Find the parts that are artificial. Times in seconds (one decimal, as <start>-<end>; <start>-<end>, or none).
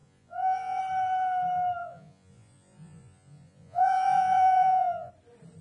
0.0-0.8; 1.8-5.1